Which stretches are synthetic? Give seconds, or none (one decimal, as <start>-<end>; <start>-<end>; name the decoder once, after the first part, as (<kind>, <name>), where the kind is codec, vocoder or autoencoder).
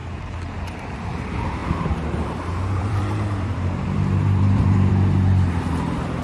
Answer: 1.6-4.9 (vocoder, BigVGAN v2)